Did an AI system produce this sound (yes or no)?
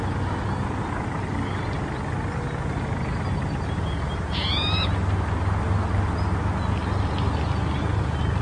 no